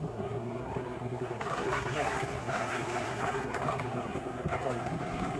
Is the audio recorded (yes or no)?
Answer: no